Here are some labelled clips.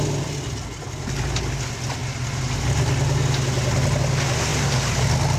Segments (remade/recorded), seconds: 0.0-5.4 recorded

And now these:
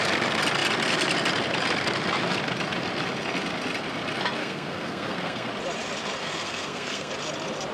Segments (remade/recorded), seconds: 0.0-4.4 recorded; 4.4-5.5 remade; 5.5-6.2 recorded; 6.2-7.1 remade; 7.1-7.7 recorded

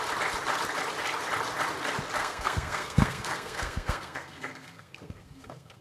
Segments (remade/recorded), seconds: 0.0-2.2 recorded; 2.2-5.8 remade

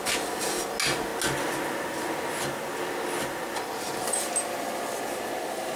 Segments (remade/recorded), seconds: 0.0-5.8 recorded

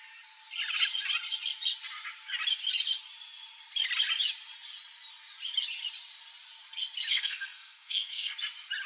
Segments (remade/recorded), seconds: 0.0-7.1 recorded; 7.1-8.3 remade; 8.3-8.9 recorded

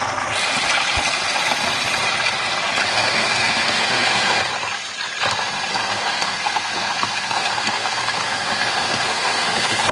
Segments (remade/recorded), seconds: 0.0-2.9 recorded; 2.9-4.4 remade; 4.4-5.7 recorded; 5.7-9.9 remade

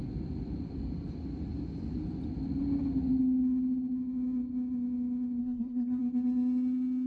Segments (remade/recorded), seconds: 0.0-5.4 recorded; 5.4-6.0 remade; 6.0-7.1 recorded